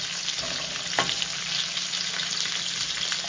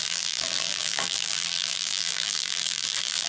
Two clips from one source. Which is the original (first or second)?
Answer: first